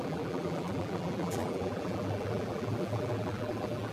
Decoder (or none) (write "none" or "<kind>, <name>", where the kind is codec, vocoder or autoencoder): vocoder, BigVGAN v2